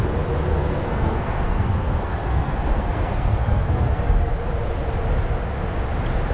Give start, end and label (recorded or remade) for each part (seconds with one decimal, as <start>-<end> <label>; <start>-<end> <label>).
0.0-0.5 recorded; 0.5-4.3 remade; 4.3-6.3 recorded